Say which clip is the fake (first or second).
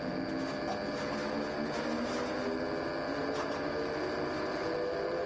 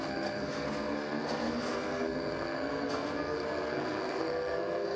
second